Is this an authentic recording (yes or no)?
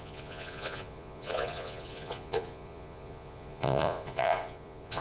no